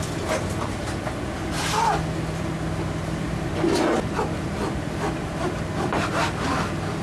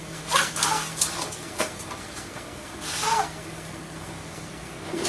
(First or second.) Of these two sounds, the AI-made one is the second